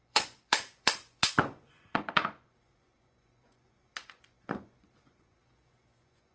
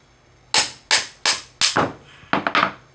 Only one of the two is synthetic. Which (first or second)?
first